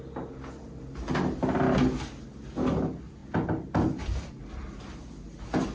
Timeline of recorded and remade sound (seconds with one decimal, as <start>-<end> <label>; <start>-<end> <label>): 0.0-5.7 recorded